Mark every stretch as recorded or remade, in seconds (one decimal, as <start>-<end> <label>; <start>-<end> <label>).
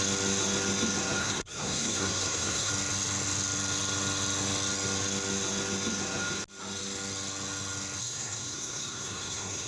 0.0-1.2 recorded; 1.2-2.7 remade; 2.7-8.0 recorded; 8.0-9.7 remade